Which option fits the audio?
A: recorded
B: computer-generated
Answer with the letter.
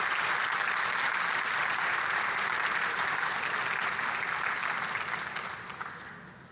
A